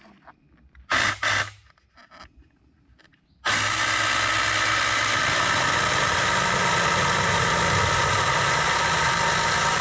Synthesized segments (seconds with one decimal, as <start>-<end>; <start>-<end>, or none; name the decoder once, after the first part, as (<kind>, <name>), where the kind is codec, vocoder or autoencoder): none